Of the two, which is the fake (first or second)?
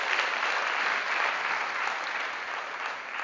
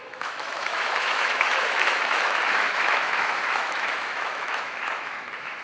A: second